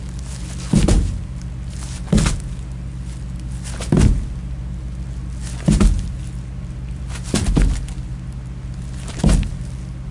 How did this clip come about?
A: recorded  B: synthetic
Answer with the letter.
A